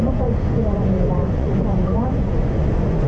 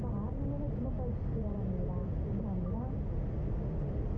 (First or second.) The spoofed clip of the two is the first